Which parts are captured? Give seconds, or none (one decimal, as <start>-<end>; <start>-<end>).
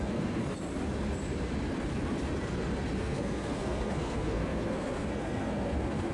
0.4-3.0